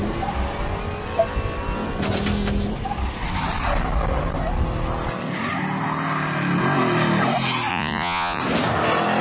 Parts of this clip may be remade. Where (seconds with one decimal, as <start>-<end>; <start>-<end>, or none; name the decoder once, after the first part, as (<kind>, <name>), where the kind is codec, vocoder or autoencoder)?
7.7-8.4 (vocoder, Vocos)